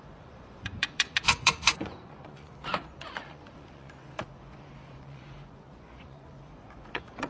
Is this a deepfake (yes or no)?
yes